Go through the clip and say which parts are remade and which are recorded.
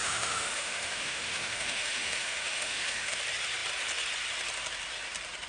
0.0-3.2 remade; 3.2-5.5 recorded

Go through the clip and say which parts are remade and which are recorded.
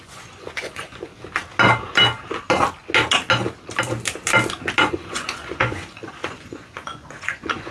0.0-1.1 remade; 1.1-4.8 recorded; 4.8-7.7 remade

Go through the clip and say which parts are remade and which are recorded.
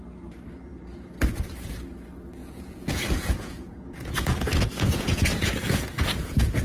0.0-2.4 recorded; 2.4-6.6 remade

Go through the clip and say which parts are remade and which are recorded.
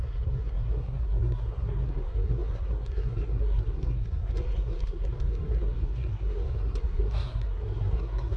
0.0-8.4 remade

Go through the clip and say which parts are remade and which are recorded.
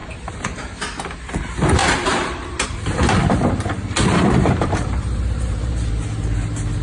0.0-0.8 remade; 0.8-1.8 recorded; 1.8-5.9 remade; 5.9-6.8 recorded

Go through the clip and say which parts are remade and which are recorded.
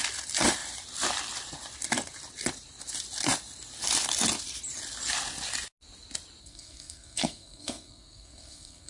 0.0-6.4 recorded; 6.4-8.9 remade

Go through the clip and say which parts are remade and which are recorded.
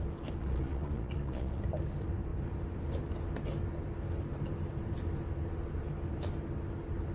0.0-0.4 recorded; 0.4-1.6 remade; 1.6-7.1 recorded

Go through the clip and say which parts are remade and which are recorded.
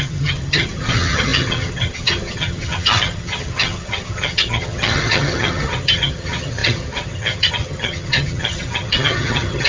0.0-9.7 remade